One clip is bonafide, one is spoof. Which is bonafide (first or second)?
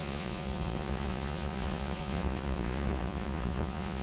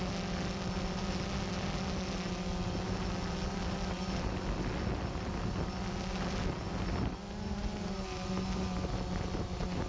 second